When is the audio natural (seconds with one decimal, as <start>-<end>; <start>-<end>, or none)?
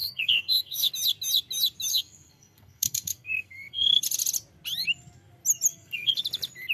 0.9-1.9; 4.0-5.7; 6.2-6.7